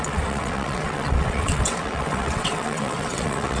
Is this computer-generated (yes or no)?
yes